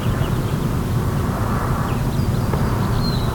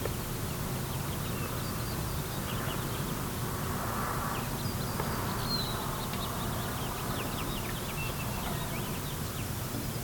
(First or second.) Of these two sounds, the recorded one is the second